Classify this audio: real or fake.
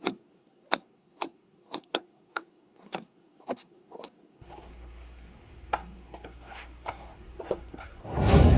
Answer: fake